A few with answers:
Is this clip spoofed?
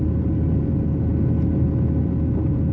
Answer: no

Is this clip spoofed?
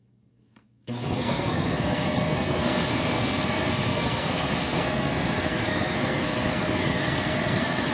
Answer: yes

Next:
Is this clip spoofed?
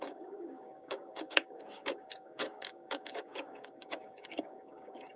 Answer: yes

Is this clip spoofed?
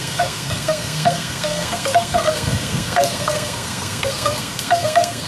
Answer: yes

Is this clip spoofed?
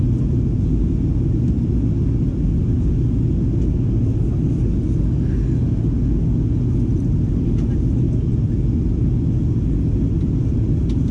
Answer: no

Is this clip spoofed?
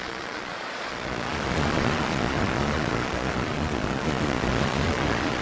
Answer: yes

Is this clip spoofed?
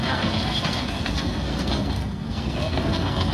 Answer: yes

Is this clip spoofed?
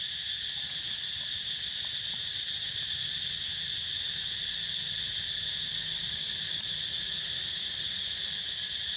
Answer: no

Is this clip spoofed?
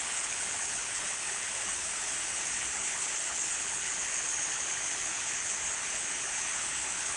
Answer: yes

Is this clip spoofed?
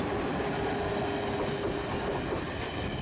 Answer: no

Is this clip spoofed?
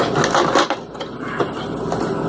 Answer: no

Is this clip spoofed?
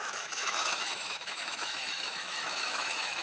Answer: yes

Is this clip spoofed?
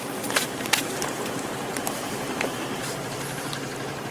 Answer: yes